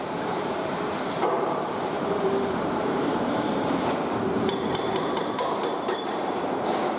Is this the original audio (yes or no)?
no